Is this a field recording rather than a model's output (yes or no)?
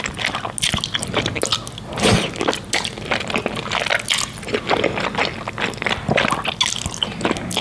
yes